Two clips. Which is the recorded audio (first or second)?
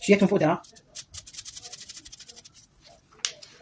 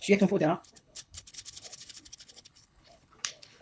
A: first